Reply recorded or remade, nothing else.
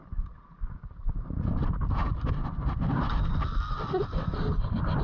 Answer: recorded